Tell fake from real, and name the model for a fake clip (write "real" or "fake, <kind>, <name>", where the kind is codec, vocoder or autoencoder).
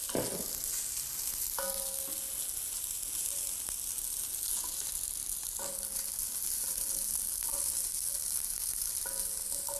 real